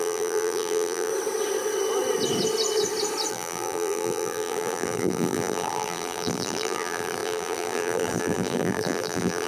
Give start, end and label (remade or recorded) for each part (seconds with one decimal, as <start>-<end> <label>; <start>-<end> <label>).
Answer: 0.0-1.1 remade; 1.1-3.3 recorded; 3.3-9.5 remade